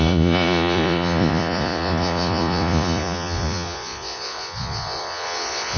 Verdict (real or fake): fake